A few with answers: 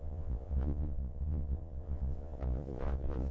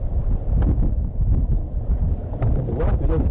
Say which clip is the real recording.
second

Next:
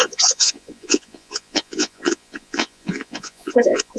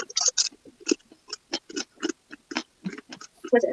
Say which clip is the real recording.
second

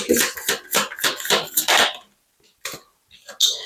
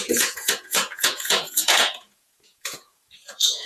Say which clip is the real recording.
first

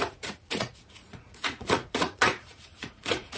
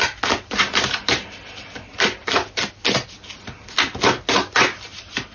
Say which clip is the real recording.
second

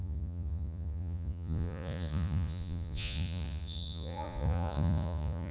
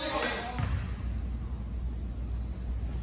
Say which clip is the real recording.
second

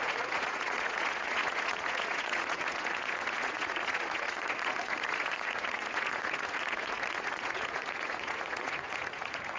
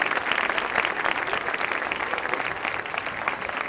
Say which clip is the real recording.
second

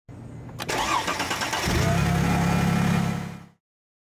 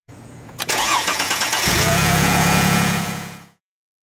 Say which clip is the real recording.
first